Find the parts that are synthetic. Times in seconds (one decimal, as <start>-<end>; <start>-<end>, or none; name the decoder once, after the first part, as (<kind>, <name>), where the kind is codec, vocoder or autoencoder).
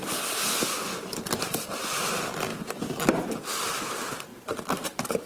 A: 2.5-3.3 (vocoder, BigVGAN v2); 4.3-5.3